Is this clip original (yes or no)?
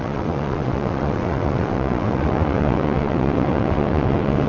no